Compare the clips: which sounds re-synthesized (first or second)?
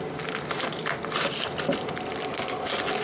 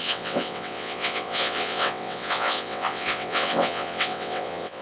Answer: second